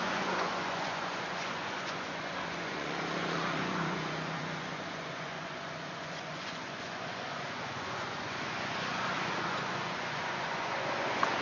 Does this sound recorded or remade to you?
remade